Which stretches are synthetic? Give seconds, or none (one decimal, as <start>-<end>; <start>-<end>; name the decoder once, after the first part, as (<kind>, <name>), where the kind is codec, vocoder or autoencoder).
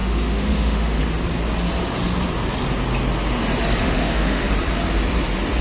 0.0-1.0 (autoencoder, DAC-VAE); 3.8-4.5